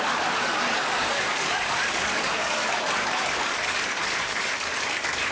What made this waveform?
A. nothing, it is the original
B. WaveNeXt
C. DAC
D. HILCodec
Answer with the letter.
C